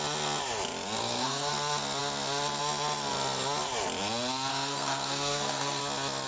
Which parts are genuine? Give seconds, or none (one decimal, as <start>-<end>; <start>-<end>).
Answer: 0.0-1.0; 1.5-4.5; 5.8-6.3